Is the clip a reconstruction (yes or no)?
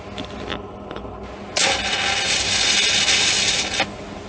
no